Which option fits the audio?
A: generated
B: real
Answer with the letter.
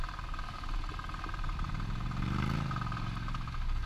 B